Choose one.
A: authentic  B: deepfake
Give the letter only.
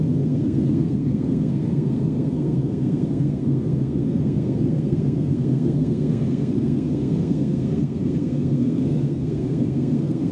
B